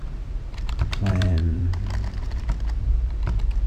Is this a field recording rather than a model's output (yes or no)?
no